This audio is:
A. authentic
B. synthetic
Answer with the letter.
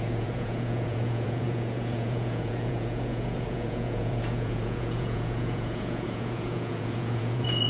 B